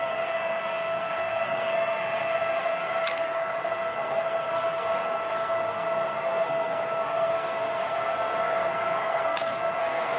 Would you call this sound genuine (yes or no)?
no